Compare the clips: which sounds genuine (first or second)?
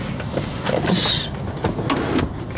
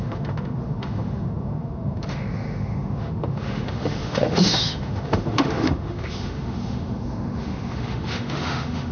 first